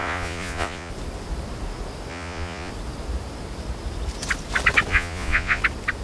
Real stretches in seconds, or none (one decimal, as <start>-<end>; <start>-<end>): 0.9-2.1; 2.7-4.9; 5.6-6.0

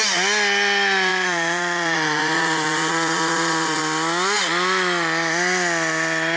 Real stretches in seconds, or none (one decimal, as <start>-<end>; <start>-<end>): 0.0-1.1; 3.8-6.4

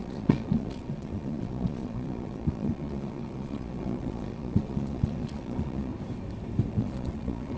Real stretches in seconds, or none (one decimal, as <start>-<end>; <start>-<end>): 5.9-6.7

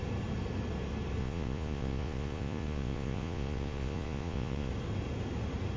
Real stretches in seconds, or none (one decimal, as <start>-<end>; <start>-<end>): 0.0-1.2; 4.7-5.8

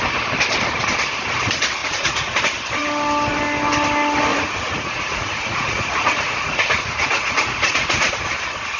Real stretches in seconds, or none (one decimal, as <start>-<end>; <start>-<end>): 0.0-1.8; 2.4-4.3; 8.1-8.8

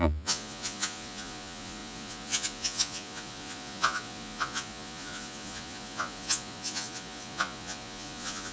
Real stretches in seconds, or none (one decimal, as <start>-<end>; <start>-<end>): none

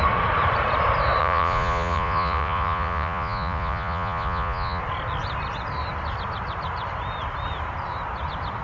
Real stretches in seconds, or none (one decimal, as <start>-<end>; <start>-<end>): 0.0-1.2; 4.8-8.6